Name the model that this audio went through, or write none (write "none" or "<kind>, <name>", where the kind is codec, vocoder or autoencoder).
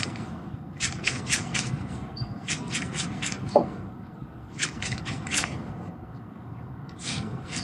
codec, SNAC